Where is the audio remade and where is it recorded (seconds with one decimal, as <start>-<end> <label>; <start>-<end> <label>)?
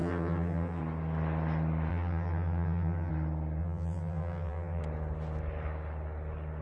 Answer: 0.0-0.8 remade; 0.8-1.9 recorded; 1.9-3.1 remade; 3.1-3.6 recorded; 3.6-4.8 remade; 4.8-6.6 recorded